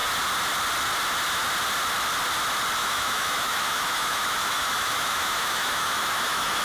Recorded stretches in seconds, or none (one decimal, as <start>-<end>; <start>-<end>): 0.0-2.8